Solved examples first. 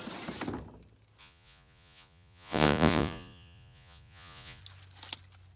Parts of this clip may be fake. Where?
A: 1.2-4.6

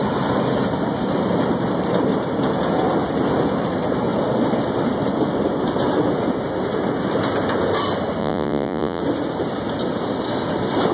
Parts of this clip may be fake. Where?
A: 8.2-9.0